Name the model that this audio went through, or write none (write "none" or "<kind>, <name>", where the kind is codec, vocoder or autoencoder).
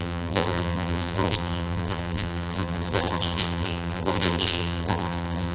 vocoder, BigVGAN v2